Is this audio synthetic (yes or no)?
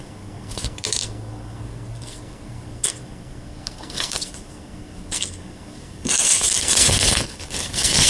yes